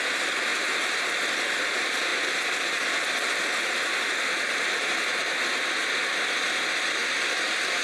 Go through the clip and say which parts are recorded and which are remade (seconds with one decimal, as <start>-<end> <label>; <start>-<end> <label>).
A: 0.0-7.8 recorded